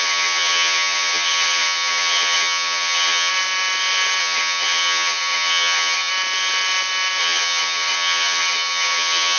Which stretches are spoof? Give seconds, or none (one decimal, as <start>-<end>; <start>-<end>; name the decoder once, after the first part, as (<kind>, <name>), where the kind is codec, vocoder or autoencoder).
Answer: 0.0-3.3 (vocoder, HiFi-GAN); 4.2-6.1; 7.2-9.4